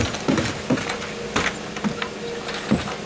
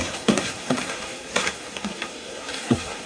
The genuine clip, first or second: first